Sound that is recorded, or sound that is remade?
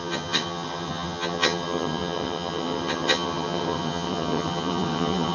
remade